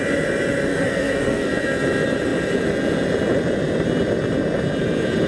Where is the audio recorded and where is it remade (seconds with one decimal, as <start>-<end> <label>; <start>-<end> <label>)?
0.0-0.7 recorded; 0.7-1.5 remade; 1.5-5.3 recorded